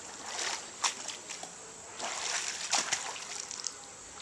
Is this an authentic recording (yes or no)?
yes